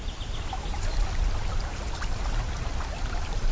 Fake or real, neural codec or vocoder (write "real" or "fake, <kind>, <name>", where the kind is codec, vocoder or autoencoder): real